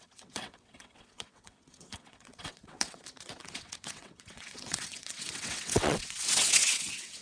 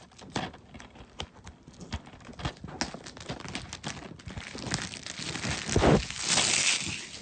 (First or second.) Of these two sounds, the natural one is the second